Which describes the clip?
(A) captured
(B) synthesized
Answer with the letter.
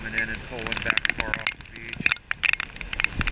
A